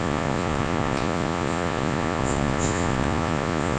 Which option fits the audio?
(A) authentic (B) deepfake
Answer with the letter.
B